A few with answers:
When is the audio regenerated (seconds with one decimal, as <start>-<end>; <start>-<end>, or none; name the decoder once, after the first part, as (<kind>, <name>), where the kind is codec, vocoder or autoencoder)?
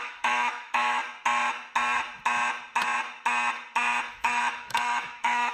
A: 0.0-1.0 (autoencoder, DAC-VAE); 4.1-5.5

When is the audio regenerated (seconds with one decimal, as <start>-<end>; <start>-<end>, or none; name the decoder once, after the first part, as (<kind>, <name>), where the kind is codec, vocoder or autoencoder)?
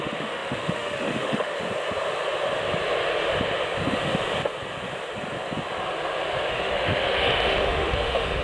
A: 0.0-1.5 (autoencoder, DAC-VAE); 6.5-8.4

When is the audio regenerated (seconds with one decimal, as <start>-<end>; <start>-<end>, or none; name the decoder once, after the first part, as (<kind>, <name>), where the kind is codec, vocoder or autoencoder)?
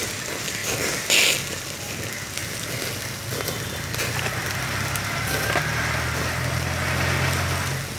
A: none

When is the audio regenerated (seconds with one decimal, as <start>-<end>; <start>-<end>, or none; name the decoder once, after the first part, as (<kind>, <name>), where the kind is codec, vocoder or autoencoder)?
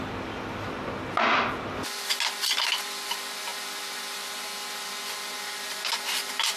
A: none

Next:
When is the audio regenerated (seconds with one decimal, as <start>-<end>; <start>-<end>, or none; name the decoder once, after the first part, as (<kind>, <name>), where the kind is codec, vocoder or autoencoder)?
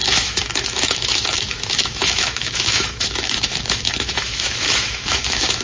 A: 0.0-5.6 (autoencoder, DAC-VAE)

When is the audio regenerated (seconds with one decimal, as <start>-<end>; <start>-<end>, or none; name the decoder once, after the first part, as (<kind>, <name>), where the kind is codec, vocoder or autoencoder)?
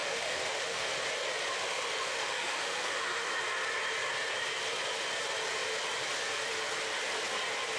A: 0.0-0.9 (autoencoder, DAC-VAE); 1.6-3.3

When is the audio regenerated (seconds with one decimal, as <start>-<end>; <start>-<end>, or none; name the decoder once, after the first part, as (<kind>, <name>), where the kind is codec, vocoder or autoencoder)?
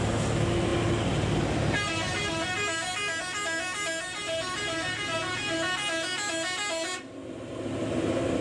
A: none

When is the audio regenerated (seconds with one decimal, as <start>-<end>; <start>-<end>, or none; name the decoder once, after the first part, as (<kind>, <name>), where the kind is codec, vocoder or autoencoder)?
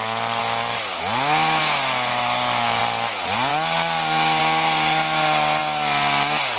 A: 0.4-1.6 (autoencoder, DAC-VAE); 2.1-2.8; 3.5-4.4